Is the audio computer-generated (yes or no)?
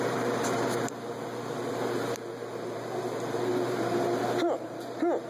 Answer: yes